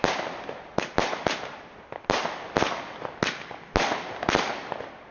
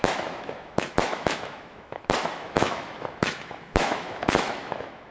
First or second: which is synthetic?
second